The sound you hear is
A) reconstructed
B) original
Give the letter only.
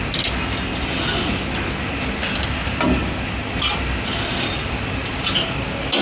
B